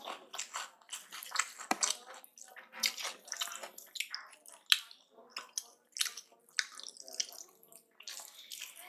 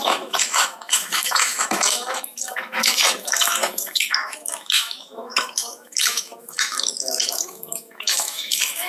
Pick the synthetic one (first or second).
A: second